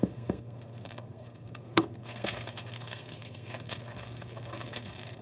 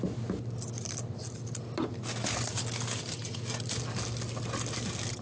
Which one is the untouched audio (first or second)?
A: second